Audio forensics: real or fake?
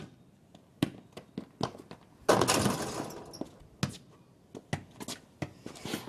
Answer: real